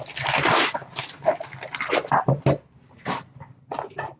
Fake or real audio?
real